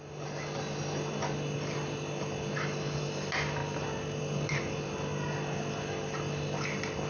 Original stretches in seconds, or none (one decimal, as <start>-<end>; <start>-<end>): 0.0-7.1

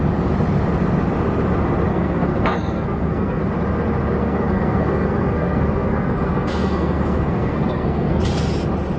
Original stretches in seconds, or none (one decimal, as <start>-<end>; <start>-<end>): 0.0-1.9; 3.4-4.2; 8.2-9.0